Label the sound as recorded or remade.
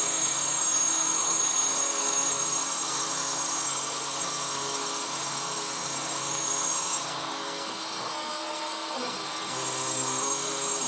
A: remade